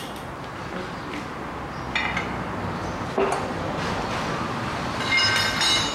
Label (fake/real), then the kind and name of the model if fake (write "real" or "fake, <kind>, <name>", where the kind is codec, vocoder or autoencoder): real